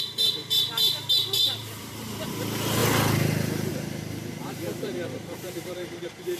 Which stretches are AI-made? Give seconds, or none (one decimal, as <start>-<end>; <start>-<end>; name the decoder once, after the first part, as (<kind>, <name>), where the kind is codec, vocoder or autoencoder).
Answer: 0.4-2.3 (vocoder, BigVGAN v2); 4.4-6.4